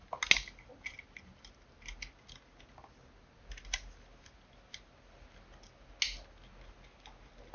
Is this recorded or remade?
recorded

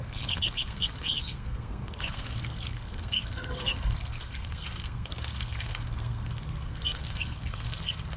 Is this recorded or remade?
remade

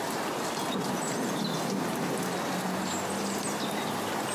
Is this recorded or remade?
recorded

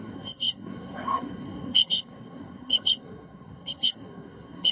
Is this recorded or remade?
remade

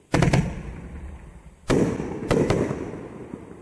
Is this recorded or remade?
recorded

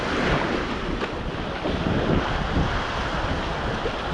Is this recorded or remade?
recorded